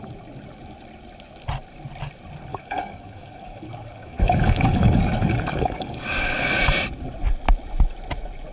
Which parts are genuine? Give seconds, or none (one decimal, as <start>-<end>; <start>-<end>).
0.0-2.5; 6.6-8.5